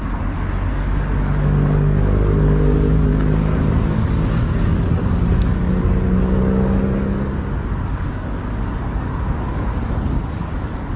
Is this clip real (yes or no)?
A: no